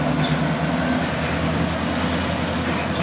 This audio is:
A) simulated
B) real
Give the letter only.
B